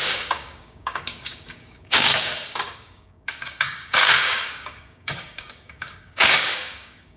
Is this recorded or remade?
remade